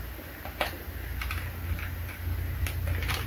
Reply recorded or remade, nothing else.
recorded